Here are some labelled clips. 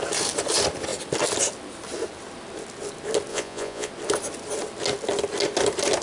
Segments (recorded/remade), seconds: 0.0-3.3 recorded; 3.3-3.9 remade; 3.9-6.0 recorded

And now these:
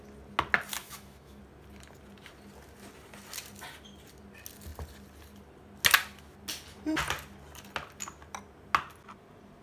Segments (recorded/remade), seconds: 0.0-0.8 recorded; 0.8-1.4 remade; 1.4-9.6 recorded